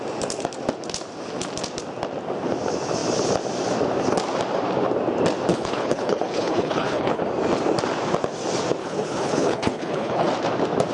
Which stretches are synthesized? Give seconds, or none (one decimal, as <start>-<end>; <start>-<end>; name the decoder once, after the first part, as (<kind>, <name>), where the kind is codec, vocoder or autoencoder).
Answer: 5.5-7.2 (codec, HILCodec); 8.8-10.3